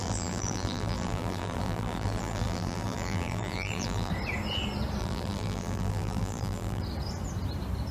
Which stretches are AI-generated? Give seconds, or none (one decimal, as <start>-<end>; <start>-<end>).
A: 0.0-4.1; 5.0-6.8